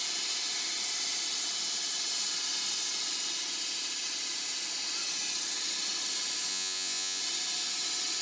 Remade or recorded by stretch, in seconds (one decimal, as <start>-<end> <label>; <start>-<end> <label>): 0.0-6.5 recorded; 6.5-7.2 remade; 7.2-8.2 recorded